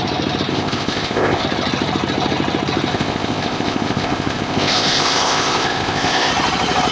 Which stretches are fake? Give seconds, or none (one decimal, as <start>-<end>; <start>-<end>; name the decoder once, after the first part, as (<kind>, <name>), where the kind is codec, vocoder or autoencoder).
0.5-1.4 (codec, ZipCodec); 2.9-6.3